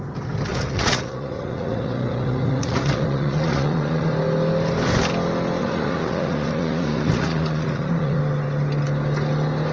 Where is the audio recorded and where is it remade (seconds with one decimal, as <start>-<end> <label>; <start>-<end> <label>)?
0.0-0.5 recorded; 0.5-4.1 remade; 4.1-5.6 recorded; 5.6-8.2 remade; 8.2-9.7 recorded